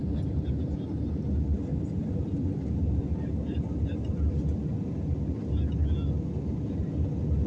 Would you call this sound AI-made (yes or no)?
no